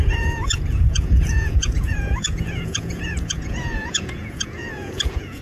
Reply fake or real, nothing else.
fake